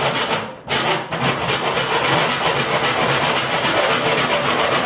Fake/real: real